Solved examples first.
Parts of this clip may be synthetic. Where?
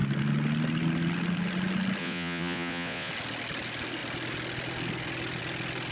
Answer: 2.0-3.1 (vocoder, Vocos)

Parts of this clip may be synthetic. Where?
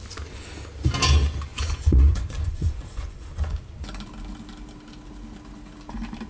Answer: 1.5-3.6 (vocoder, Vocos)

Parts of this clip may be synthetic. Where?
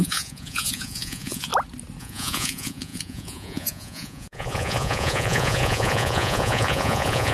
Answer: 0.0-1.5 (vocoder, Vocos); 2.0-7.3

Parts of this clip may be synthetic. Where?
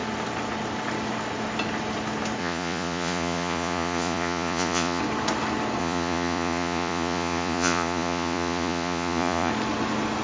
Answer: 2.4-5.0 (vocoder, Vocos); 5.8-9.5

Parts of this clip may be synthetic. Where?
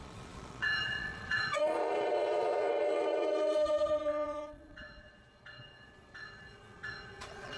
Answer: 0.0-7.6 (vocoder, Vocos)